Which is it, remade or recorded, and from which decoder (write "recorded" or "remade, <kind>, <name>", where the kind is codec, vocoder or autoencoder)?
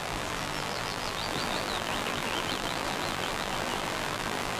remade, vocoder, BigVGAN v2